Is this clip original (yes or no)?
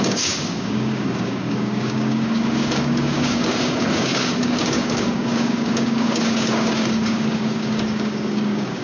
no